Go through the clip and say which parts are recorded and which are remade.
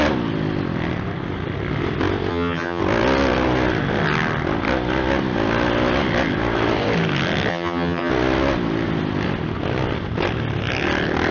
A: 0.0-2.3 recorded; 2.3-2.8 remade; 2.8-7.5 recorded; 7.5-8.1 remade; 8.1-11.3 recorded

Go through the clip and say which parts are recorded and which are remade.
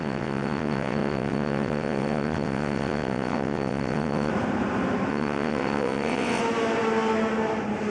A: 0.0-4.3 remade; 4.3-5.1 recorded; 5.1-6.4 remade; 6.4-7.9 recorded